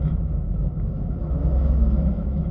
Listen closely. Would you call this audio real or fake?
fake